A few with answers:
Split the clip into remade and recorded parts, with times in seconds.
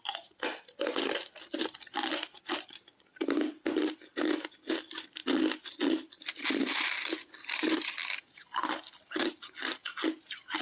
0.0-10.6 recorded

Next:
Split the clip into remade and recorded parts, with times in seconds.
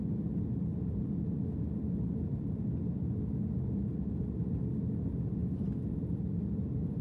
0.0-7.0 recorded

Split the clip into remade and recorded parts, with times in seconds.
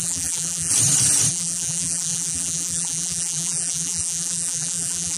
0.0-0.7 remade; 0.7-1.3 recorded; 1.3-5.2 remade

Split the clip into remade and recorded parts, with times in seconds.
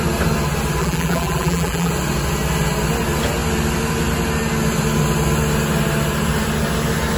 0.0-0.8 recorded; 0.8-1.9 remade; 1.9-7.2 recorded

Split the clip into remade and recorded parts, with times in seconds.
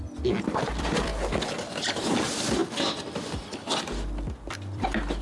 0.0-1.1 remade; 1.1-2.0 recorded; 2.0-5.2 remade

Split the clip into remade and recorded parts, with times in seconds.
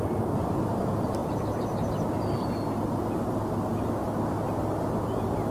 0.0-1.2 recorded; 1.2-1.9 remade; 1.9-5.5 recorded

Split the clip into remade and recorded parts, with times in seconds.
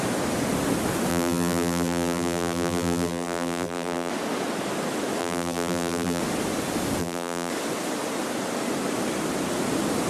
0.0-1.1 recorded; 1.1-4.1 remade; 4.1-5.2 recorded; 5.2-6.2 remade; 6.2-7.0 recorded; 7.0-7.5 remade; 7.5-10.1 recorded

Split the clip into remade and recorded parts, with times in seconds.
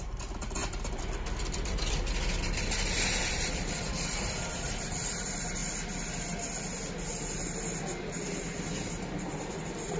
0.0-5.6 remade; 5.6-9.2 recorded; 9.2-10.0 remade